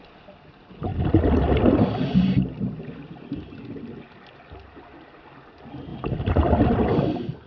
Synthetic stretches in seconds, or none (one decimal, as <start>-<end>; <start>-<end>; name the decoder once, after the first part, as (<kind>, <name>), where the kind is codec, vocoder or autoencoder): none